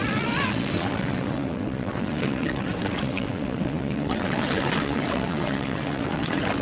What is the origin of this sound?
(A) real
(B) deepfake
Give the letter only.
B